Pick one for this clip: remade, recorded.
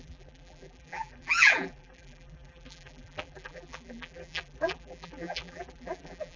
remade